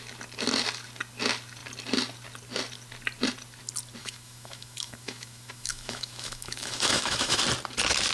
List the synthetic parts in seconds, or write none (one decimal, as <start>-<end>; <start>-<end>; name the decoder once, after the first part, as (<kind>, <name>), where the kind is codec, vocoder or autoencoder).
4.0-7.4 (autoencoder, DAC-VAE)